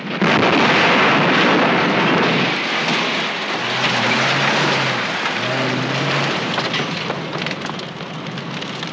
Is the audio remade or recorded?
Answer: recorded